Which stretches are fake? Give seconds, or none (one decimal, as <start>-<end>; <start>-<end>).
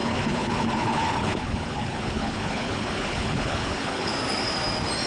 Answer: 0.0-4.1